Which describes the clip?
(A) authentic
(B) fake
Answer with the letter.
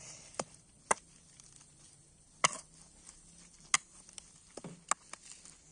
A